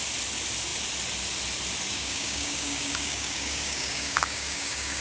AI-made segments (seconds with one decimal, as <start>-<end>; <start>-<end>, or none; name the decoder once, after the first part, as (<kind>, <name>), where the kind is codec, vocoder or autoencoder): 1.9-5.0 (codec, DAC)